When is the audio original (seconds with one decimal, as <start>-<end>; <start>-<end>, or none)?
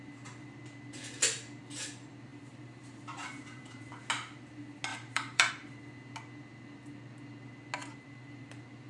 0.0-2.3; 3.9-4.9; 5.5-7.8; 8.5-8.9